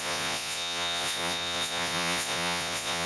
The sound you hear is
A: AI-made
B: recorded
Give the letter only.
A